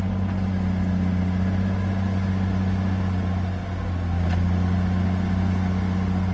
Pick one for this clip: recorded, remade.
recorded